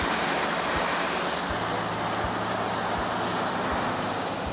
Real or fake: real